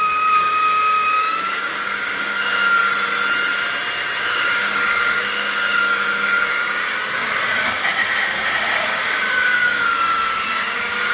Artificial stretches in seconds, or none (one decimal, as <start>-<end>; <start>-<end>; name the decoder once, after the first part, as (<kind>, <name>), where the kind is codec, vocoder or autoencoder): 0.0-2.8 (codec, DAC); 4.2-11.1